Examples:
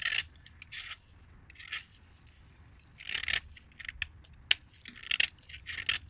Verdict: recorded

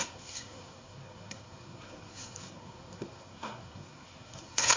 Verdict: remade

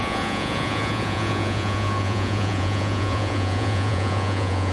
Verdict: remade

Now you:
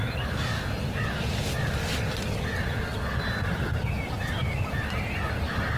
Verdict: recorded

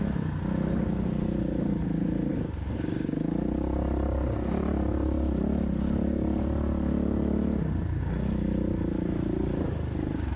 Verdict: recorded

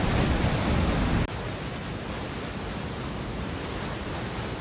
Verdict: recorded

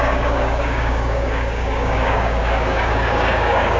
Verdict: remade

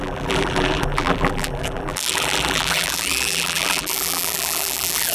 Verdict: remade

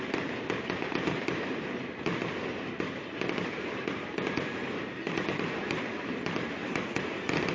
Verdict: remade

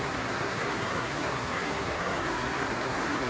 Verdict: remade